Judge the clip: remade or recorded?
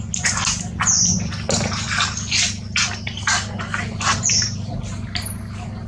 recorded